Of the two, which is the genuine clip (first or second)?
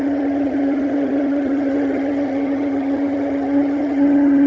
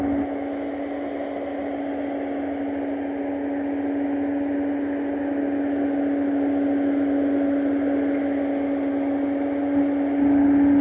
second